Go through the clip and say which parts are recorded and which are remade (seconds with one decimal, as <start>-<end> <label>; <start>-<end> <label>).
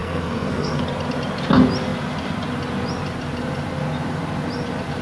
0.0-0.8 remade; 0.8-5.0 recorded